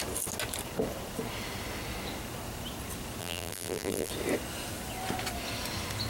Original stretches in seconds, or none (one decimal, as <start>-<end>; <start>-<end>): 0.0-3.2; 4.1-6.1